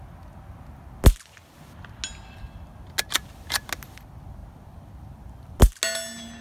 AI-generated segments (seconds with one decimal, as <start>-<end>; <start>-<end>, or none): none